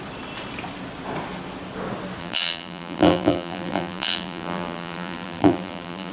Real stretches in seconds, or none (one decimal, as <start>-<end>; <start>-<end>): 0.0-2.2